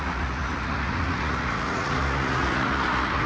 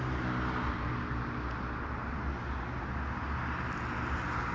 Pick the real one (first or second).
second